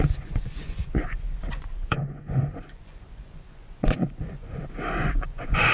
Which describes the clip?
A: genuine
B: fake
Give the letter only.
B